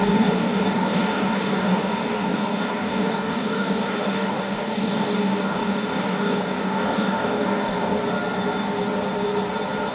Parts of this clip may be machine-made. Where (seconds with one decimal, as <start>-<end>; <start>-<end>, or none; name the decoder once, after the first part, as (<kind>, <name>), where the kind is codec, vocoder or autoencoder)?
0.0-8.0 (codec, DAC)

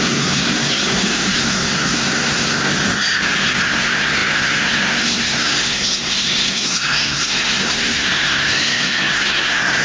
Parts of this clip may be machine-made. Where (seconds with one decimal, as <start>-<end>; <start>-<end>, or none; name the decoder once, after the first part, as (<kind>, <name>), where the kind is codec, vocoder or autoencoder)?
0.0-2.7 (codec, SNAC); 3.4-9.8

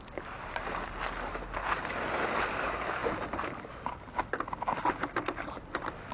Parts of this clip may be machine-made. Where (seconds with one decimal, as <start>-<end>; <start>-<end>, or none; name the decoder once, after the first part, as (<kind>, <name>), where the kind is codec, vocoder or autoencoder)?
none

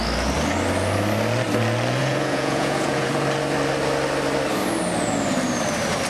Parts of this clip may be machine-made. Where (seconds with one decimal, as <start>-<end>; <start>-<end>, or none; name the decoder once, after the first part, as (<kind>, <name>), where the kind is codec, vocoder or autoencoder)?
2.0-3.1 (vocoder, Vocos)